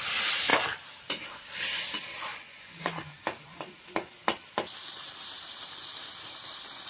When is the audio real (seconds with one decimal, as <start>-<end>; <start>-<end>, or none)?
0.0-2.3; 2.9-6.9